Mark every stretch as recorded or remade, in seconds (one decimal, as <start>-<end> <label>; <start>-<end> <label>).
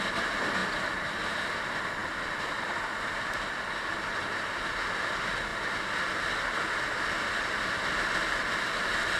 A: 0.0-9.2 recorded